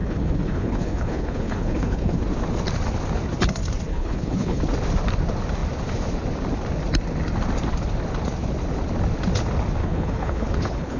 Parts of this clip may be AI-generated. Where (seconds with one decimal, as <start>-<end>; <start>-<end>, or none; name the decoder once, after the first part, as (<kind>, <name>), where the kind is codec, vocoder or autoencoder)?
0.0-2.2 (codec, HILCodec); 3.9-4.6; 9.8-11.0